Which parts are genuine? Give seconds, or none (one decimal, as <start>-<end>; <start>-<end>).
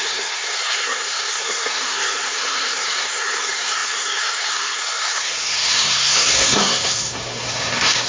none